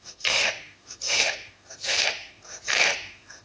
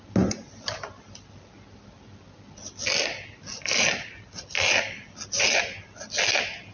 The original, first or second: second